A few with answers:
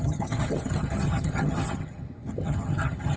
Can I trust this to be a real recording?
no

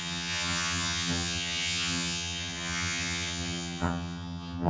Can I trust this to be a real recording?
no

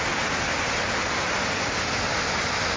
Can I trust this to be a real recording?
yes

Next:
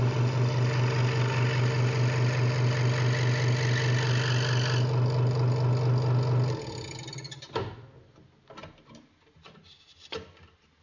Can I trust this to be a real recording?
yes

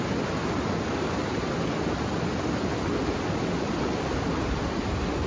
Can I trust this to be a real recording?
yes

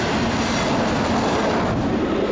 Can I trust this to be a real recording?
yes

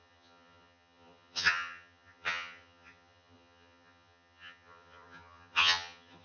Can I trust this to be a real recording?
no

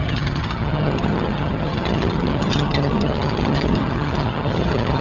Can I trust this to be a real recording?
no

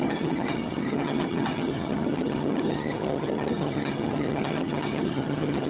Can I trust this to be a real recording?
no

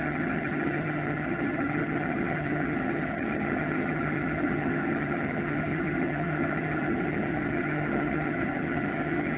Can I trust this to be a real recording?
no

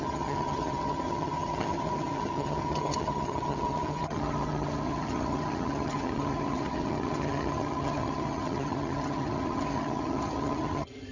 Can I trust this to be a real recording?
no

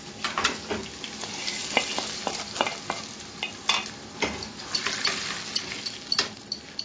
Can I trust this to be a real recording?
yes